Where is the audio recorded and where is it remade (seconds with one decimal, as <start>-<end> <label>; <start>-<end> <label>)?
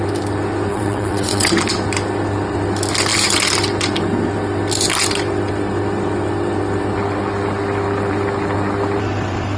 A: 0.0-0.7 recorded; 0.7-1.5 remade; 1.5-9.6 recorded